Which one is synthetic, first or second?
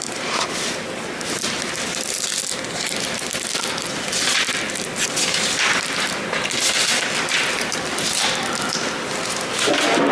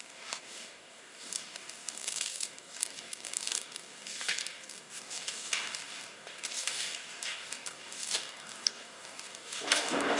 second